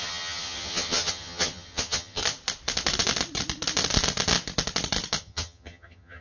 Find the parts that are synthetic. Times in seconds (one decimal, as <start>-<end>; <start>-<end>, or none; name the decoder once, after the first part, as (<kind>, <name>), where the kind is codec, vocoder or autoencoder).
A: 0.0-2.2 (vocoder, HiFi-GAN); 5.2-6.2